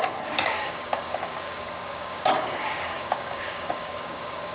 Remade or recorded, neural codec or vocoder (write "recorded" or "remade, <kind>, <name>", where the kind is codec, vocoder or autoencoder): remade, codec, DAC